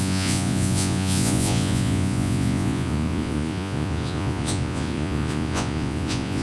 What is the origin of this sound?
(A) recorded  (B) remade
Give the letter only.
B